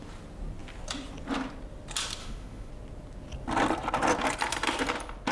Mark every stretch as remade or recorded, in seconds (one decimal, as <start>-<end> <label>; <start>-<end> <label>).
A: 0.0-2.2 recorded; 2.2-2.7 remade; 2.7-5.3 recorded